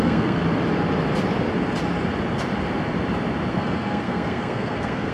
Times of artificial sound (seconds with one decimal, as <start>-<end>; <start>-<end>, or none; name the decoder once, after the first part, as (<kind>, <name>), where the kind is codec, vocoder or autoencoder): 0.0-0.4 (codec, SNAC); 3.5-5.1